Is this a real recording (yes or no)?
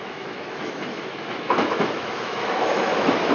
no